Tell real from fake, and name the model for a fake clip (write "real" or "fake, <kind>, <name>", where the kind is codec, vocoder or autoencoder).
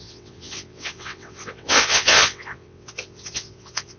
fake, vocoder, WaveNeXt